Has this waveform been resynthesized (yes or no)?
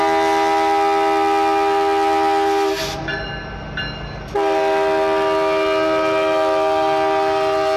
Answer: no